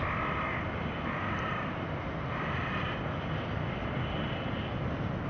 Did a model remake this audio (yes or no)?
no